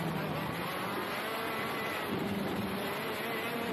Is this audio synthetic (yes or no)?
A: no